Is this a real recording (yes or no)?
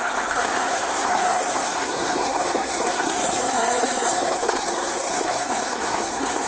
no